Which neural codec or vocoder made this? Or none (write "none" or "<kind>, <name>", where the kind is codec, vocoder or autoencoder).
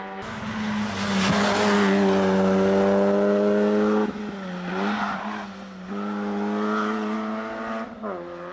none